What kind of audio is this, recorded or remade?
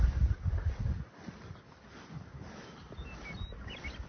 recorded